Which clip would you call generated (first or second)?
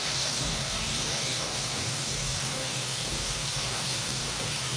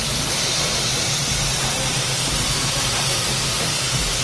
first